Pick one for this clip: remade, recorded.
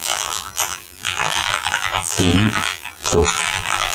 remade